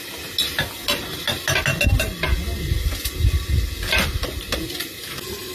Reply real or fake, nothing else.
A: real